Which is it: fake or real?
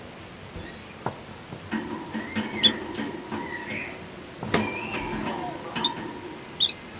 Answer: real